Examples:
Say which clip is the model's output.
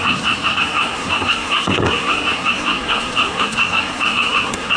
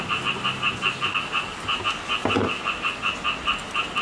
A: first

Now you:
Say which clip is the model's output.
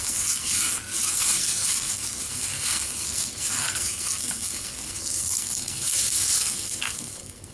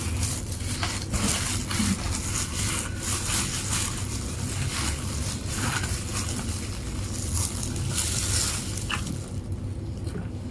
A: first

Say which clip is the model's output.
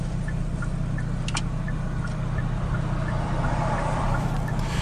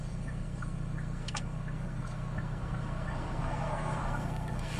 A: second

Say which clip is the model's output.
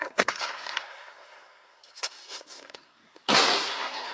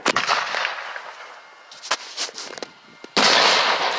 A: first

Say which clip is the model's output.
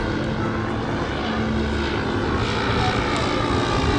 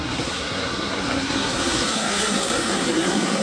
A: second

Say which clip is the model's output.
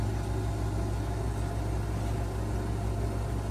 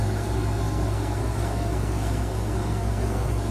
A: second